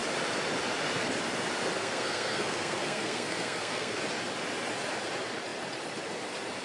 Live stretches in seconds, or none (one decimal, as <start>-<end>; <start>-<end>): 0.0-1.8; 4.0-6.6